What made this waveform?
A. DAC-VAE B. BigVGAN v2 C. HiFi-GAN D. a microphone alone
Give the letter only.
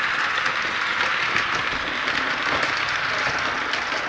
D